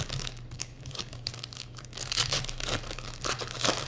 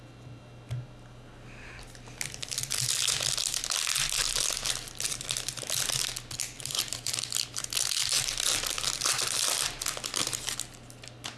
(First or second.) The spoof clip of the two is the first